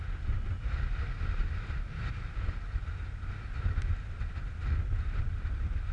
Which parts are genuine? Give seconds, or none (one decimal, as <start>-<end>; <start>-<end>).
0.0-5.9